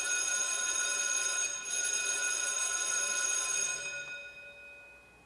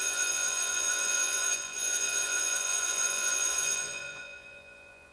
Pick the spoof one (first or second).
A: second